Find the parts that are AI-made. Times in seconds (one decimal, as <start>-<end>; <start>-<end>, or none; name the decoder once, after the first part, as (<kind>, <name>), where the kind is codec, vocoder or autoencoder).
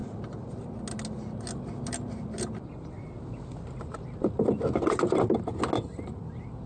none